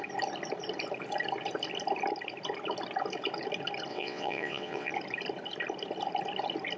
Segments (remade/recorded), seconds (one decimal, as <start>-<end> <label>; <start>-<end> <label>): 0.0-3.9 recorded; 3.9-4.9 remade; 4.9-6.8 recorded